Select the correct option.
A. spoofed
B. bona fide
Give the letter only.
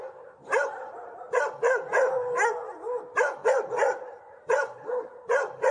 B